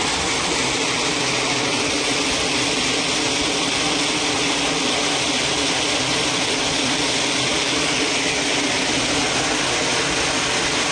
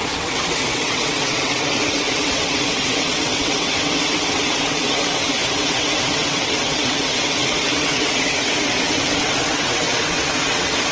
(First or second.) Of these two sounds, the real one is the first